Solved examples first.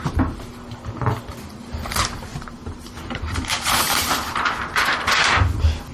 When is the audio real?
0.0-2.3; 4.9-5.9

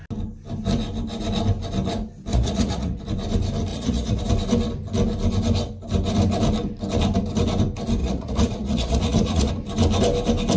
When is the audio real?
0.0-2.3; 3.0-3.7; 4.2-8.0; 9.5-10.6

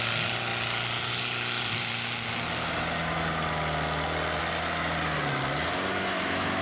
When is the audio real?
0.0-5.9

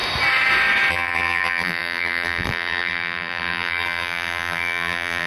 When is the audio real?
0.0-0.9

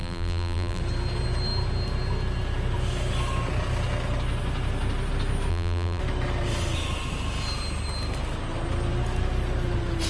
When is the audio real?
0.8-5.5; 6.0-10.1